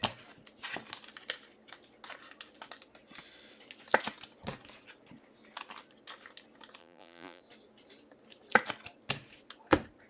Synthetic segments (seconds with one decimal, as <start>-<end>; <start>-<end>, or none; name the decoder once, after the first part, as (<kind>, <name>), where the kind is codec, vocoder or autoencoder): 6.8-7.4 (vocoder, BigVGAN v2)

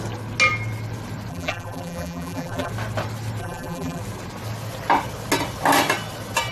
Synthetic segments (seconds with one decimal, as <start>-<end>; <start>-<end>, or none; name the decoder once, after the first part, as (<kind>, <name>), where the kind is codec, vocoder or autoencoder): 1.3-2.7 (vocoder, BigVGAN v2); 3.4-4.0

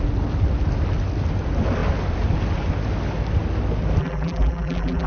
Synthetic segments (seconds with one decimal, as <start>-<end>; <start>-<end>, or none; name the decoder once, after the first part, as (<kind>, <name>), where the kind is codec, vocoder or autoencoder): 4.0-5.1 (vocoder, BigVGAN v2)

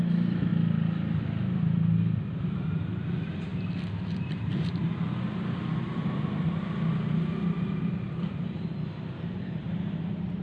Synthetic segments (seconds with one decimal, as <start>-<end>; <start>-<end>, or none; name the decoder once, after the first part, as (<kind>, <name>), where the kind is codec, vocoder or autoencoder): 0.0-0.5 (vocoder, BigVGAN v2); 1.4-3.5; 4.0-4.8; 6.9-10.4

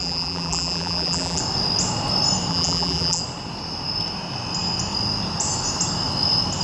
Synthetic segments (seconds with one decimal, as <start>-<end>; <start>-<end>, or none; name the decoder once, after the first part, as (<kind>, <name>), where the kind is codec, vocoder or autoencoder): 0.0-1.4 (vocoder, BigVGAN v2); 2.5-3.2

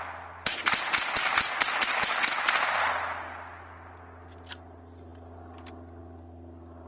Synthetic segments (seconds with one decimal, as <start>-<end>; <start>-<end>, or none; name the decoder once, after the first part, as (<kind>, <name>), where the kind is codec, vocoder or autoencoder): none